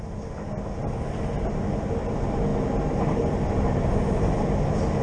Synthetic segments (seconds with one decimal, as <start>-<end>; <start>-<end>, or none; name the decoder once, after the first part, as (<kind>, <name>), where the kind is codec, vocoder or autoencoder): none